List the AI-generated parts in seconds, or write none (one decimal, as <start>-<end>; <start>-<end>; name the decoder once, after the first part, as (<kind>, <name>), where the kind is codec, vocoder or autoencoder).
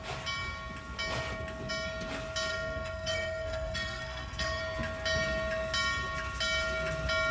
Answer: 2.5-4.6 (codec, SNAC)